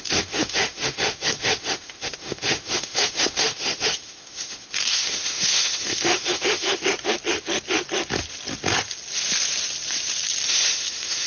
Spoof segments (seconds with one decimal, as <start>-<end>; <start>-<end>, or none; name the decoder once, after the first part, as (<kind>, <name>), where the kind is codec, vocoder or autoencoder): 0.0-6.8 (autoencoder, DAC-VAE); 10.5-11.3